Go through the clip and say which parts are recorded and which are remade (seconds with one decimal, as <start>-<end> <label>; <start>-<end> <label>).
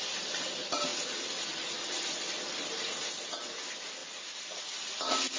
0.0-5.4 recorded